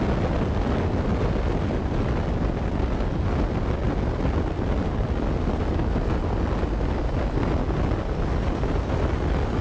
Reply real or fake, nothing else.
real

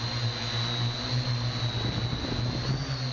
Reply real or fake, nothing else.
real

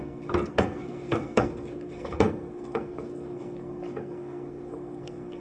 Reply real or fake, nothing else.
fake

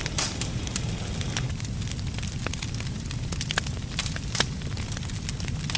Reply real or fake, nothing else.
real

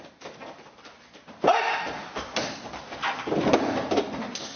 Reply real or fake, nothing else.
real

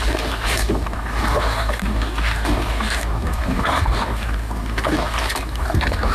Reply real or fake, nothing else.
fake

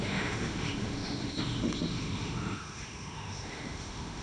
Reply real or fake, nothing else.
fake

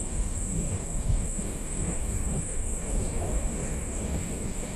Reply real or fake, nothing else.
fake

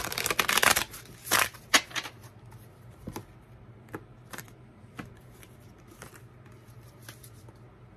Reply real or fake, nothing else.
real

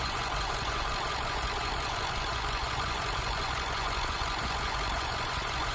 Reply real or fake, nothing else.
fake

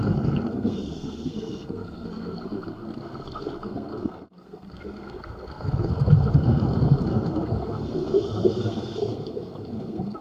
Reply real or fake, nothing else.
fake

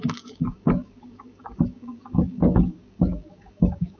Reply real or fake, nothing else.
fake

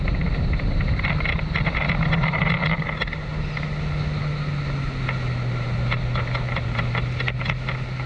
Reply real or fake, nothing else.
real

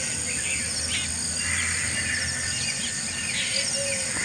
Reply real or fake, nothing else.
real